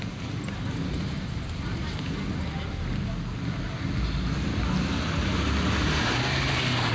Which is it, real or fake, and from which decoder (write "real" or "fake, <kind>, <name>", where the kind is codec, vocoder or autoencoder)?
real